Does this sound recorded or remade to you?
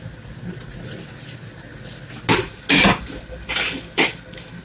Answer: recorded